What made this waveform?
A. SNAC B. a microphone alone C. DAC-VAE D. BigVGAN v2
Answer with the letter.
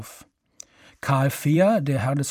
D